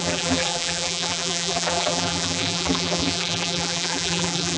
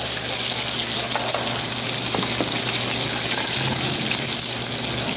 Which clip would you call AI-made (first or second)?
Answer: first